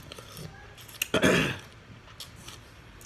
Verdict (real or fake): real